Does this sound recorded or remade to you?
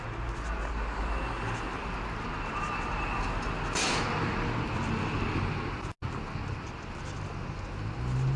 recorded